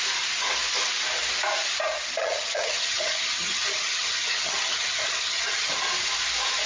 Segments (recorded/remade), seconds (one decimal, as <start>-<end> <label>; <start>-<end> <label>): 0.0-2.2 recorded; 2.2-5.7 remade; 5.7-6.7 recorded